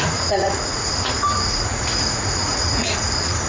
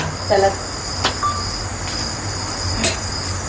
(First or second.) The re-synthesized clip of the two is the first